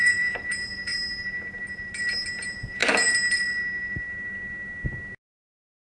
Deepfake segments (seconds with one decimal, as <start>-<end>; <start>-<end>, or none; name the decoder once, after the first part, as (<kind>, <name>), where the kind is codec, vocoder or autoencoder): 0.0-0.9 (vocoder, Vocos); 2.4-2.8